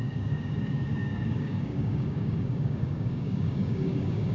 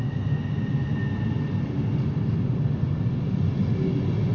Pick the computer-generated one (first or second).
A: first